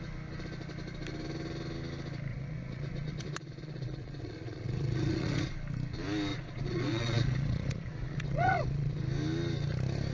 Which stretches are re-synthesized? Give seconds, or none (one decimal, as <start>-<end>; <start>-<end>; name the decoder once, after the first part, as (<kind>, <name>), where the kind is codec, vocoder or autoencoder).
2.3-5.5 (vocoder, Vocos); 6.3-9.0